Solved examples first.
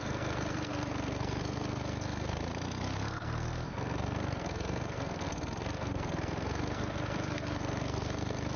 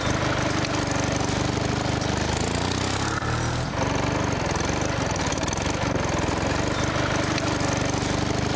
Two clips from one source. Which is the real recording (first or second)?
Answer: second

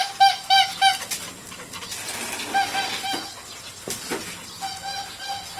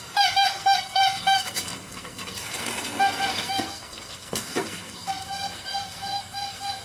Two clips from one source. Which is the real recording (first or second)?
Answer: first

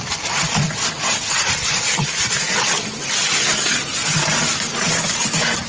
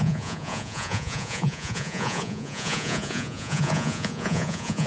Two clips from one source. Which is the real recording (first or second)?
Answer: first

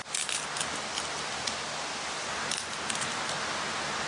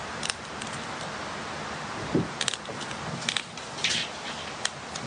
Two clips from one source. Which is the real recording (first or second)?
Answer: first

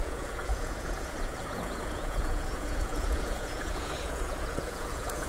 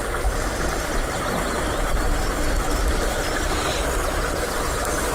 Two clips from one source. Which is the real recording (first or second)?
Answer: second